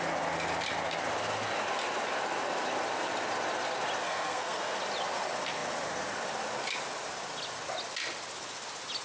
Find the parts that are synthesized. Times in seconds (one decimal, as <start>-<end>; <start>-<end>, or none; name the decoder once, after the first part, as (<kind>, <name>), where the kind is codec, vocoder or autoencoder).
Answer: 4.0-4.8 (codec, SNAC)